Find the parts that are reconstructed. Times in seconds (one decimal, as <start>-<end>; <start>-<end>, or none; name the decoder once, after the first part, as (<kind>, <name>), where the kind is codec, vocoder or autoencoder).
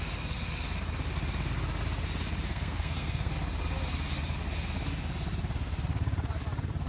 2.5-3.3 (codec, SNAC)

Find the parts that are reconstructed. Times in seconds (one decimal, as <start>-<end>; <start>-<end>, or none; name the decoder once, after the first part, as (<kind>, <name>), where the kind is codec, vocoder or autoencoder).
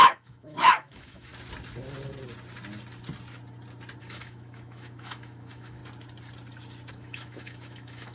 0.0-1.3 (autoencoder, DAC-VAE); 4.0-5.8; 6.9-8.1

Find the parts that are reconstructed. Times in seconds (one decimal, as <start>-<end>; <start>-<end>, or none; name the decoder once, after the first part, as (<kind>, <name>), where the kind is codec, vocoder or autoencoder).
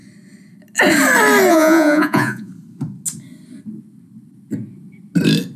1.5-2.5 (vocoder, Vocos)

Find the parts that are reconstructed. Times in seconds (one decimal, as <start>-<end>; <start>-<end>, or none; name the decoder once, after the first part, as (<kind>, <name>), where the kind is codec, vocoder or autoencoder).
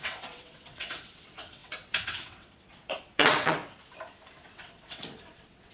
0.0-3.6 (vocoder, WaveNeXt); 4.4-5.7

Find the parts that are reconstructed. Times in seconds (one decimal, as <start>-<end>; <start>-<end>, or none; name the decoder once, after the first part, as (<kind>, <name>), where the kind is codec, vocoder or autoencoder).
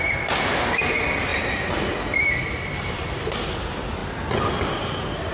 0.0-1.3 (vocoder, BigVGAN v2); 2.4-4.0; 4.7-5.3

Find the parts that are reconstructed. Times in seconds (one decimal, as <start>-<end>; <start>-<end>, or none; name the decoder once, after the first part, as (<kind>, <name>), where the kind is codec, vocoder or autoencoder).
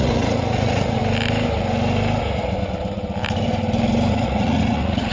0.0-1.0 (vocoder, Vocos); 4.1-5.1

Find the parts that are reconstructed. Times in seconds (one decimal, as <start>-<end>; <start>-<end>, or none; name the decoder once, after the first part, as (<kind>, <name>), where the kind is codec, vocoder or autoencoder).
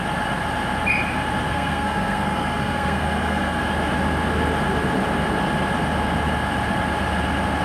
1.5-3.6 (codec, SNAC)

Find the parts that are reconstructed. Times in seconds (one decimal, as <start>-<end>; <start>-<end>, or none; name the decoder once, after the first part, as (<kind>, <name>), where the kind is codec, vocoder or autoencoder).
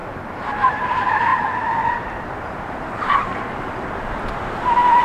none